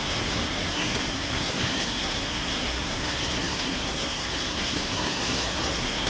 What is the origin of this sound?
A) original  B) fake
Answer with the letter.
B